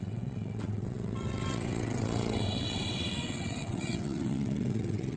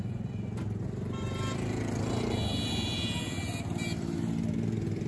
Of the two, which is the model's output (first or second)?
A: first